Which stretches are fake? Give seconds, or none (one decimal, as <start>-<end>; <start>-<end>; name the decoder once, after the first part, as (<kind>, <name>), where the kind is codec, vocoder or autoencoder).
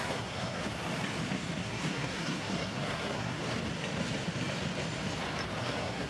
0.0-0.6 (codec, SNAC); 1.6-3.4; 5.6-6.1